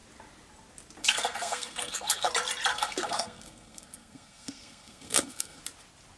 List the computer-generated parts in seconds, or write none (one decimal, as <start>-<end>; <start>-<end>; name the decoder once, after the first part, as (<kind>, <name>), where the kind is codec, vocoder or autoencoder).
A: 1.0-2.3 (codec, SNAC); 2.7-5.6